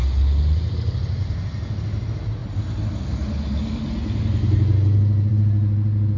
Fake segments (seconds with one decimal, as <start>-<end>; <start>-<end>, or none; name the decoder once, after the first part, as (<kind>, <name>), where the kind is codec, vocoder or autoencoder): none

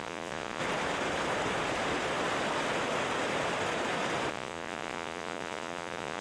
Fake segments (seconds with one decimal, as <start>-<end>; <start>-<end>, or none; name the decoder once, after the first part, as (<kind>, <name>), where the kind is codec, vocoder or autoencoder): 0.0-0.6 (vocoder, Vocos); 4.3-6.2

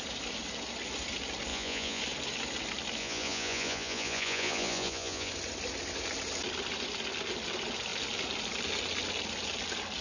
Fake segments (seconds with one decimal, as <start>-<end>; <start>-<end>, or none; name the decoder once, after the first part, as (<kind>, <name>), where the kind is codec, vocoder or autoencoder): 1.5-2.0 (vocoder, Vocos); 3.0-5.3